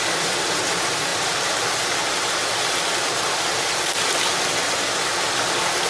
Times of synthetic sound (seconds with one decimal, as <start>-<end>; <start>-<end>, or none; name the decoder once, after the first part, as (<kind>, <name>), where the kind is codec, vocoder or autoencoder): none

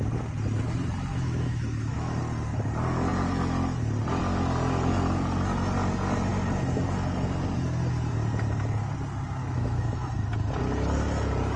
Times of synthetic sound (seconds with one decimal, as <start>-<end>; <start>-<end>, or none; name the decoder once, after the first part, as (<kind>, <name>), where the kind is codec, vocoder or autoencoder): 1.1-2.2 (autoencoder, DAC-VAE); 9.4-10.3

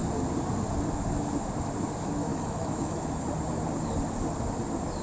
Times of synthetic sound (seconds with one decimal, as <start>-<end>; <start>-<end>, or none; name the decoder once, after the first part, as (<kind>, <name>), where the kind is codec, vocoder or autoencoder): 2.3-3.3 (autoencoder, DAC-VAE)

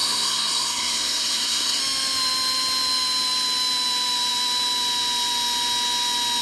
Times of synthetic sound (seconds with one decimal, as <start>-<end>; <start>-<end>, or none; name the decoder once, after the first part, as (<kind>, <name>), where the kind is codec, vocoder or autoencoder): 0.0-1.8 (codec, SNAC)

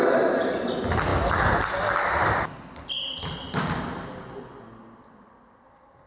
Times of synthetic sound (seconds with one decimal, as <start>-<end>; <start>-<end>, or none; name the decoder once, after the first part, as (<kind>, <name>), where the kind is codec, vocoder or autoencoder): none

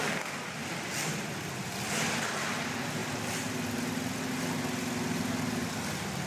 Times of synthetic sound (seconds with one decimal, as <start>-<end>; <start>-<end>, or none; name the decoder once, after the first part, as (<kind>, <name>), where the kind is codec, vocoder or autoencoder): none